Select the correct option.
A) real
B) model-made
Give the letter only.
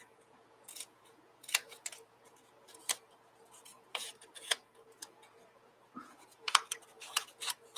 B